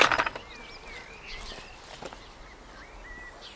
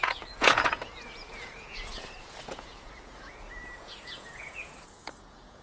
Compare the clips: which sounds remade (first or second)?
second